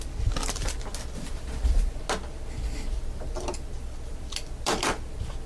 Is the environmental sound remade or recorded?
recorded